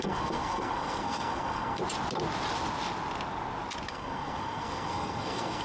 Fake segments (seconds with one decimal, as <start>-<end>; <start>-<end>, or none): 0.0-1.8; 3.9-5.6

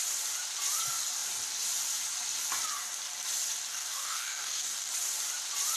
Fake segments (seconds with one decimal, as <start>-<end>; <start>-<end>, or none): 3.7-4.9

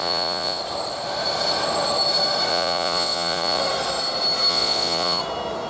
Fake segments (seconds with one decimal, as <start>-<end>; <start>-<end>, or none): 0.0-0.6; 2.5-3.6; 4.5-5.2

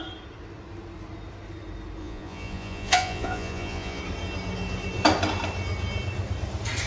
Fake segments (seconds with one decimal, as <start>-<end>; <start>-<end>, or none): 2.0-4.0

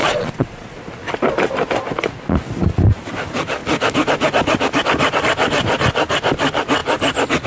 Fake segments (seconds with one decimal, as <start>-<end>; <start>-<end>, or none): 0.0-0.8

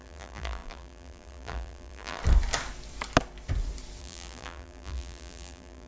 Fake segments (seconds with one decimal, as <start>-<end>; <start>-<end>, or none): 0.0-2.2; 4.0-5.9

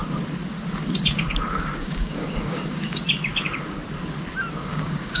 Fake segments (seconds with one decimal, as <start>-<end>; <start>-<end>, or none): 1.8-3.0; 4.6-5.2